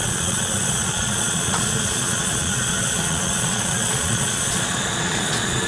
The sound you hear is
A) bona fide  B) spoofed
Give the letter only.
B